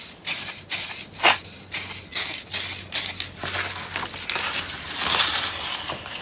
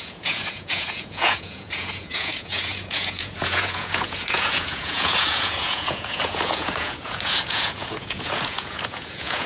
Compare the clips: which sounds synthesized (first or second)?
second